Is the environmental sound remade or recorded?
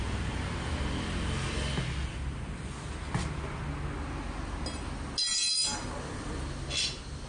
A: recorded